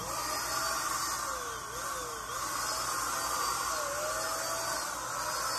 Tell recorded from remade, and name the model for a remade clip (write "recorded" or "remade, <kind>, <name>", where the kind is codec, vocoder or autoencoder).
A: recorded